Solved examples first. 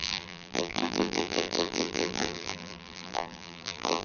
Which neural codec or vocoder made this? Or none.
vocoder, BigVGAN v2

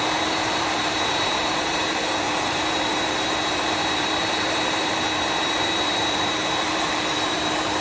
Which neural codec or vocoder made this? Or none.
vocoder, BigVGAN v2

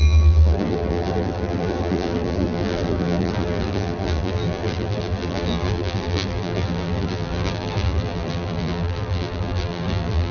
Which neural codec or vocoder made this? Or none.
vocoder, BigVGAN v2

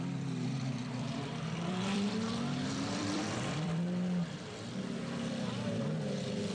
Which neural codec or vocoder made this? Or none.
vocoder, BigVGAN v2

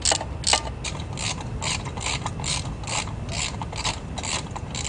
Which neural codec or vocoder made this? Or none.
none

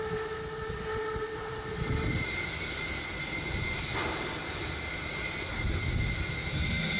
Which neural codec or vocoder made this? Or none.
none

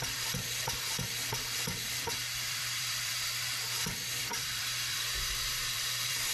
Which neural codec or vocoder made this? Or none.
vocoder, BigVGAN v2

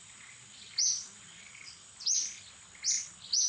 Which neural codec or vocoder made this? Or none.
none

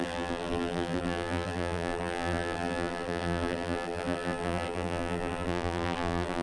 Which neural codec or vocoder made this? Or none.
vocoder, BigVGAN v2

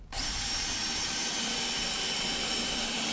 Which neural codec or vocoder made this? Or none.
vocoder, BigVGAN v2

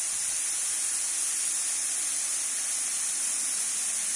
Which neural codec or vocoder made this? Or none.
none